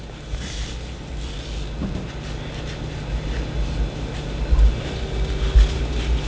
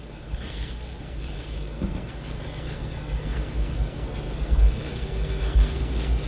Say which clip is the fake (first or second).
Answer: second